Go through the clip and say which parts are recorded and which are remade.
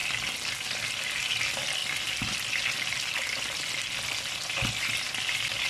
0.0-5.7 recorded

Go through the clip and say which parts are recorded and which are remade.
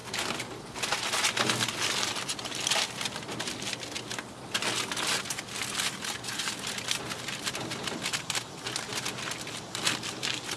0.0-10.6 recorded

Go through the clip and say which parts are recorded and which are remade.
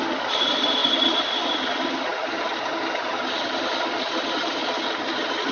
0.0-5.5 recorded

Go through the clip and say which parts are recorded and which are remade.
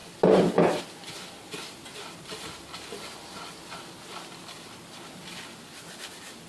0.0-6.5 recorded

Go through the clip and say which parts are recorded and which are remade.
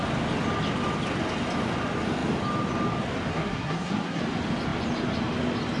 0.0-3.3 recorded; 3.3-4.2 remade; 4.2-5.8 recorded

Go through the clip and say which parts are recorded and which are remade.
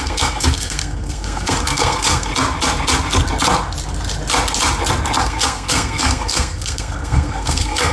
0.0-2.3 remade; 2.3-5.2 recorded; 5.2-7.9 remade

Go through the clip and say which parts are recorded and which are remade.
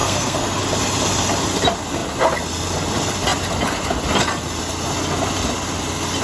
0.0-0.6 remade; 0.6-6.2 recorded